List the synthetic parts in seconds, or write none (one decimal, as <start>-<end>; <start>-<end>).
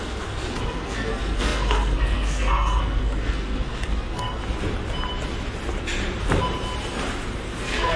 0.0-4.4; 7.6-8.0